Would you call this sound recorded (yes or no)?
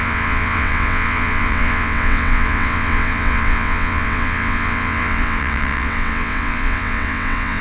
no